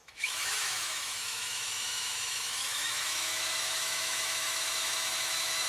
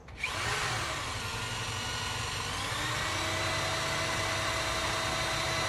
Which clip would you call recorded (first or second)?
second